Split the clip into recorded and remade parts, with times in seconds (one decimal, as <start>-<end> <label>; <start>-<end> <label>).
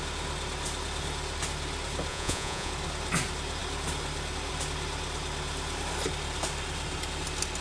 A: 0.0-2.1 recorded; 2.1-2.7 remade; 2.7-7.6 recorded